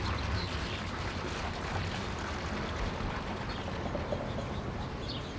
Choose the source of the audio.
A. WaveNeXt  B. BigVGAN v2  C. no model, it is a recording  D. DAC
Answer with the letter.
C